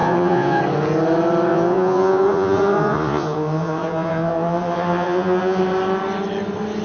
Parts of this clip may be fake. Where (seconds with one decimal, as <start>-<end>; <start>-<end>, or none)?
0.0-0.6; 1.5-5.6